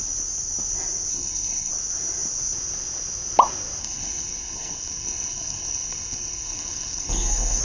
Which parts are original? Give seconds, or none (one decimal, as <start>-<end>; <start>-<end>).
0.0-1.1; 1.7-3.8